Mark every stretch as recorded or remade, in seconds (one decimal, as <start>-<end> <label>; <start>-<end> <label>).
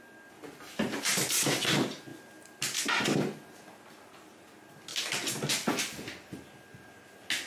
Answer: 0.0-2.1 recorded; 2.1-3.5 remade; 3.5-7.5 recorded